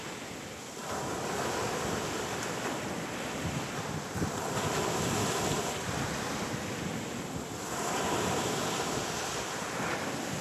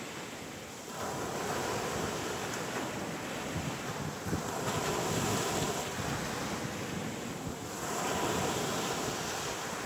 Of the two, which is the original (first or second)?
second